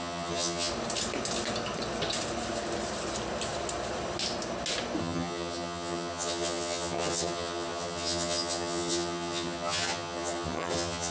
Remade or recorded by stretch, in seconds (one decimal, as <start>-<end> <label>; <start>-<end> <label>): 0.0-0.7 remade; 0.7-5.0 recorded; 5.0-11.1 remade